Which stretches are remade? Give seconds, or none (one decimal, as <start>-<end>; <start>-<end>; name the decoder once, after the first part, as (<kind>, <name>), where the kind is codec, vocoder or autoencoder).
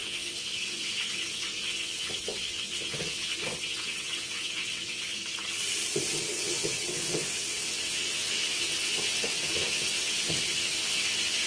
0.0-5.2 (vocoder, WaveNeXt); 6.2-11.5